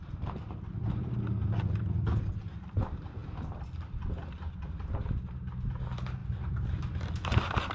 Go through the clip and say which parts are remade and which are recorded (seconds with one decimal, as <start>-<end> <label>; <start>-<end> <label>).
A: 0.0-7.7 recorded